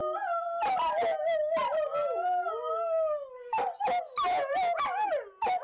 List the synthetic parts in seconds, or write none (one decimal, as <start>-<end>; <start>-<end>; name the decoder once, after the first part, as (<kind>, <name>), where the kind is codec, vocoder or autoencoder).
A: none